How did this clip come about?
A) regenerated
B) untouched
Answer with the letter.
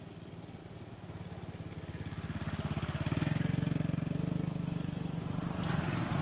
B